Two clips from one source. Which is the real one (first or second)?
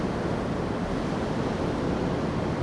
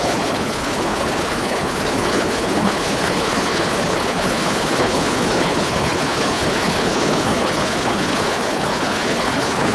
first